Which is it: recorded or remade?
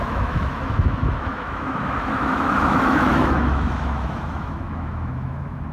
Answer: remade